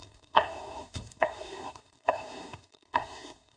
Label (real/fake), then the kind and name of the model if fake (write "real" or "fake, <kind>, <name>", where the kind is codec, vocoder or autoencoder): fake, codec, SNAC